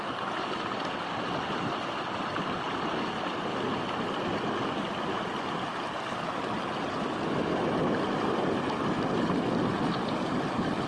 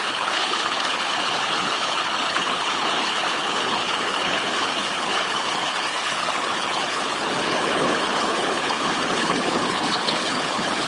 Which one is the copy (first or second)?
second